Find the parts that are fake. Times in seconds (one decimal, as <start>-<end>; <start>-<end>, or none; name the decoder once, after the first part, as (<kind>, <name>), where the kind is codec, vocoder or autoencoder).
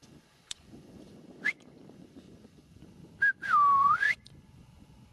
0.0-3.1 (vocoder, Vocos); 3.8-5.1